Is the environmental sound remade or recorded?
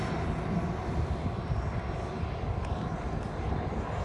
recorded